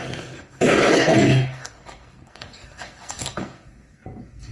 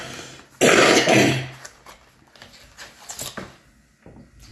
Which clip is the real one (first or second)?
second